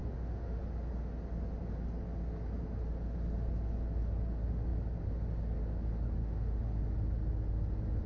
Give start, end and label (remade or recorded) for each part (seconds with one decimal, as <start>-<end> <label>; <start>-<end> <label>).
0.0-0.6 remade; 0.6-6.2 recorded; 6.2-6.8 remade; 6.8-8.1 recorded